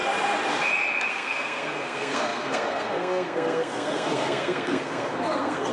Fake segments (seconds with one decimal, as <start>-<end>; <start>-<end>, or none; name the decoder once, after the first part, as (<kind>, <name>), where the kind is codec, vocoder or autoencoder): 1.1-5.7 (codec, SNAC)